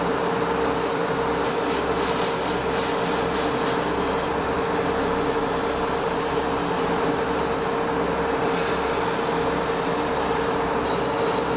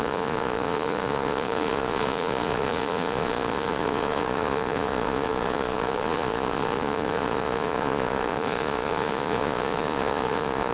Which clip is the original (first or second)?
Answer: first